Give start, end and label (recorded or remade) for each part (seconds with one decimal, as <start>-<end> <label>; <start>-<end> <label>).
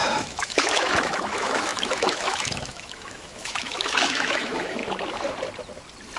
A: 0.0-4.8 remade; 4.8-6.2 recorded